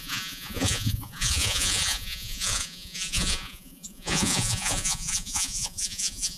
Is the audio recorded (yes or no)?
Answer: no